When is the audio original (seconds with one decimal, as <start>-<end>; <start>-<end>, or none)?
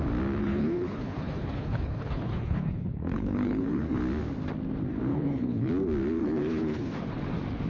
0.0-0.4; 4.0-5.1; 5.7-6.2; 6.9-7.7